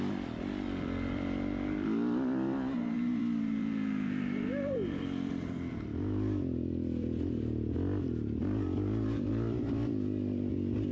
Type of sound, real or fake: fake